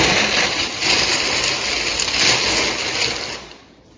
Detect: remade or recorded recorded